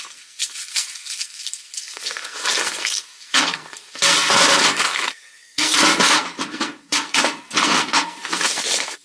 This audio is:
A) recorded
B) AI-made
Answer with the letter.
B